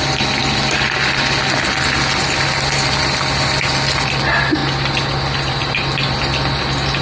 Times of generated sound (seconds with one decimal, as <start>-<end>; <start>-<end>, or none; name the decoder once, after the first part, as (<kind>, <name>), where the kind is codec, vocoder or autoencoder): 0.0-0.4 (vocoder, BigVGAN v2); 2.7-4.6; 5.5-7.0